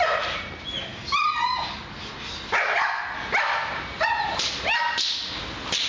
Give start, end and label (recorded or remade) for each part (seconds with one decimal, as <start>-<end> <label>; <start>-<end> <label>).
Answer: 0.0-5.9 recorded